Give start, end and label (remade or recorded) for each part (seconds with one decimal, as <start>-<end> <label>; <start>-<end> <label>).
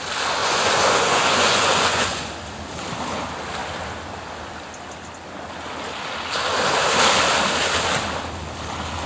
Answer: 0.0-0.4 recorded; 0.4-2.3 remade; 2.3-9.1 recorded